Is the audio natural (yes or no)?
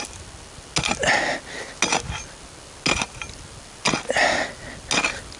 yes